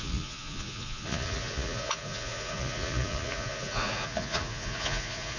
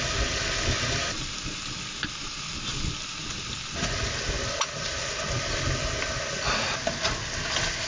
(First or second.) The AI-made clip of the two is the first